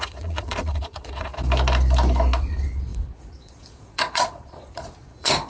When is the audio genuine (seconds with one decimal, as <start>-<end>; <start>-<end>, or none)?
1.3-2.4